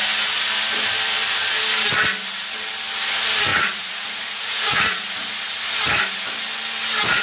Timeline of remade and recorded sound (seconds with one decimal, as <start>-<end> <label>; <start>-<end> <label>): 0.0-3.5 recorded; 3.5-5.3 remade; 5.3-7.2 recorded